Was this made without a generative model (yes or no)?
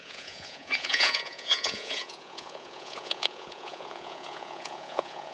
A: no